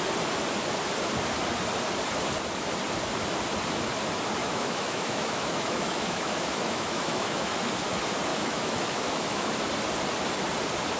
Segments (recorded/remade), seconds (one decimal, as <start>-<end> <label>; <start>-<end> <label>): 0.0-4.4 recorded; 4.4-7.7 remade; 7.7-8.3 recorded; 8.3-9.5 remade; 9.5-11.0 recorded